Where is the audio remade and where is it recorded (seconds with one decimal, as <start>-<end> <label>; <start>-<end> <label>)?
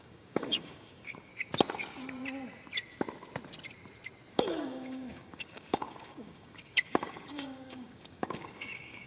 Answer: 0.0-1.3 remade; 1.3-4.3 recorded; 4.3-9.1 remade